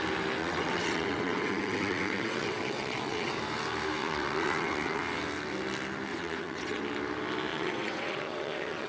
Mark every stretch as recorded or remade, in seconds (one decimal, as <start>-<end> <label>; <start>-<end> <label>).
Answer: 0.0-0.4 recorded; 0.4-3.4 remade; 3.4-4.0 recorded; 4.0-5.0 remade; 5.0-6.1 recorded; 6.1-6.8 remade; 6.8-7.5 recorded; 7.5-8.9 remade